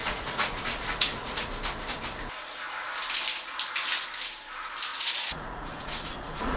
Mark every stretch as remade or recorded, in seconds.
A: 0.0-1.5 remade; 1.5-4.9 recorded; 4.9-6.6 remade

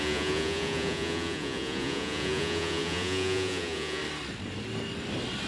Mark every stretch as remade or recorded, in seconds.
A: 0.0-4.0 remade; 4.0-5.5 recorded

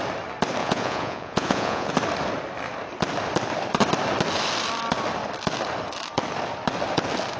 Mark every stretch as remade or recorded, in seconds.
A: 0.0-0.6 recorded; 0.6-1.9 remade; 1.9-7.4 recorded

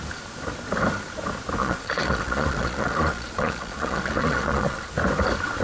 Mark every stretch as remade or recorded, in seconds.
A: 0.0-1.6 recorded; 1.6-4.9 remade; 4.9-5.6 recorded

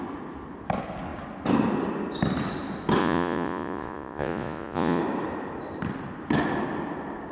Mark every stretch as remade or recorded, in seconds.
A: 0.0-3.0 recorded; 3.0-5.0 remade; 5.0-7.3 recorded